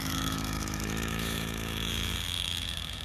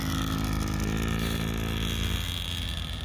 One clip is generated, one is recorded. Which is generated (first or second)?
first